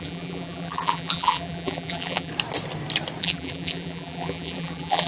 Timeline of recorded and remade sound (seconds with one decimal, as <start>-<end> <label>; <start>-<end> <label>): 0.0-2.3 remade; 2.3-3.2 recorded; 3.2-5.1 remade